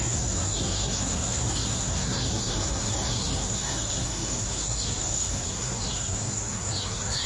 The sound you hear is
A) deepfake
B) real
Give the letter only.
A